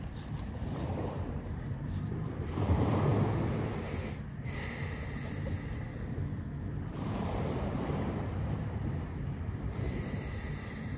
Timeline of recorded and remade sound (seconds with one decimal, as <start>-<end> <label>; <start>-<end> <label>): 0.0-3.1 remade; 3.1-6.9 recorded; 6.9-11.0 remade